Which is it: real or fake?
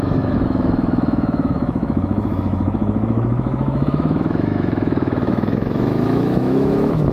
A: fake